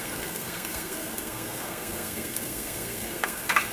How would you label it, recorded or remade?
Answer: remade